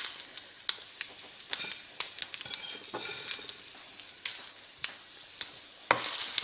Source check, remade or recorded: recorded